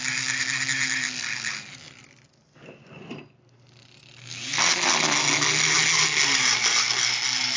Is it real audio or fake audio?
real